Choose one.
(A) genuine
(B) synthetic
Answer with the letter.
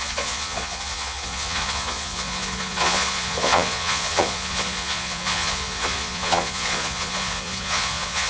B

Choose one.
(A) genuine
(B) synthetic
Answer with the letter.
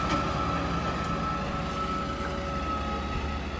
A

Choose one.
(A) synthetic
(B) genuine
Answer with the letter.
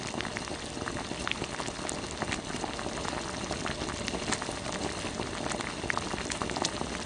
B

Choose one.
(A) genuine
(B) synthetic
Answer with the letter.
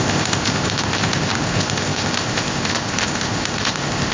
B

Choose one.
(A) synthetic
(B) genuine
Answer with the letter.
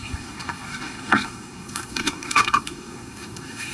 A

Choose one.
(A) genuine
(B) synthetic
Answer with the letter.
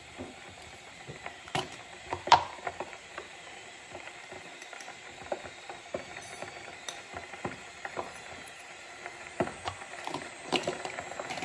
B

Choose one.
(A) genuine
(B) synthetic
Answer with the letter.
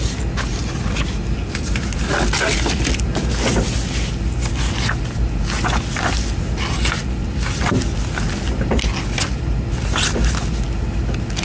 A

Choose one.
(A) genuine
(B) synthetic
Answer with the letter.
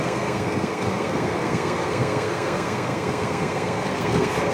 B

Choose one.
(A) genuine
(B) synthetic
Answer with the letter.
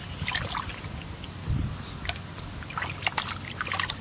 A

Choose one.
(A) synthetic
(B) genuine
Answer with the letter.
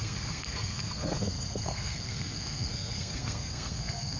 A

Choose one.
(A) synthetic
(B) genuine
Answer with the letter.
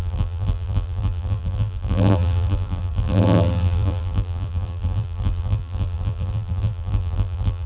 A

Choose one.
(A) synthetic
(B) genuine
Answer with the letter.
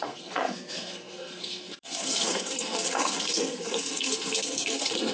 A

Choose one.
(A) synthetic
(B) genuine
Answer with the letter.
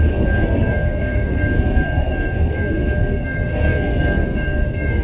A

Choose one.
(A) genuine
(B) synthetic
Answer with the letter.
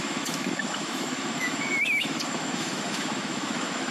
B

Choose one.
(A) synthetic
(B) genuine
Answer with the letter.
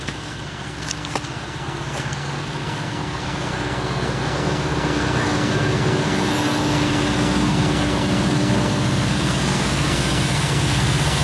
A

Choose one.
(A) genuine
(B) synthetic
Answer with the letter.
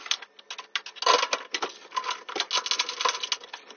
A